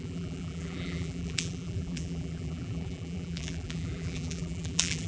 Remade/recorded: remade